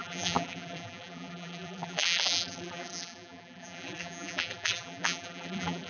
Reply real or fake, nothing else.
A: fake